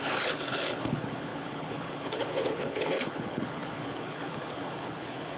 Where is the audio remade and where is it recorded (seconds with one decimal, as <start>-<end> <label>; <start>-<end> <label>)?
0.0-5.4 remade